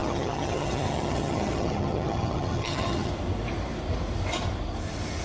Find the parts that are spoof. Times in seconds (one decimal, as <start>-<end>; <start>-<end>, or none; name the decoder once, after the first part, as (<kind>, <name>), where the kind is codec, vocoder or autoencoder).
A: 0.0-3.1 (vocoder, HiFi-GAN)